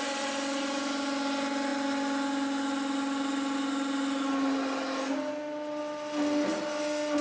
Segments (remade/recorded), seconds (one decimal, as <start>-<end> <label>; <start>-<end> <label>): 0.0-7.2 recorded